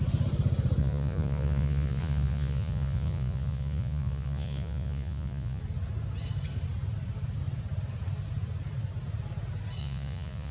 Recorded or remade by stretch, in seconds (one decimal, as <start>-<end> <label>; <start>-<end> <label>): 0.0-0.8 recorded; 0.8-5.6 remade; 5.6-9.8 recorded; 9.8-10.5 remade